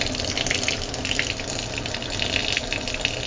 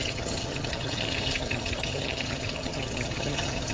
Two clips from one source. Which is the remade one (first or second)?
second